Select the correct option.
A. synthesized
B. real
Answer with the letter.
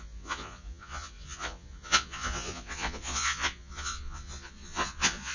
A